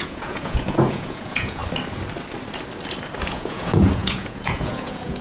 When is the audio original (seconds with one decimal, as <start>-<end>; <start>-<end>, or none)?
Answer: 1.6-3.2